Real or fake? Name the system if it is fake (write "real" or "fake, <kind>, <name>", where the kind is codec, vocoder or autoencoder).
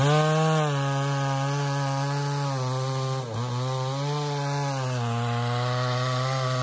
real